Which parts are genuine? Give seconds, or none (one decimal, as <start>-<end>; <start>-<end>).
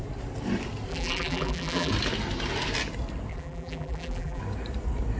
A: 0.0-0.9; 1.9-3.3; 4.4-5.2